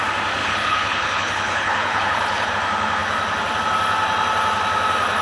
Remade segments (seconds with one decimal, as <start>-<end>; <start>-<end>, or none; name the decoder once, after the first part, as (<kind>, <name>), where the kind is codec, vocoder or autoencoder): 0.4-2.5 (codec, HILCodec)